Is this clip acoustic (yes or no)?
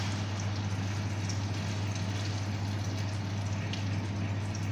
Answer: yes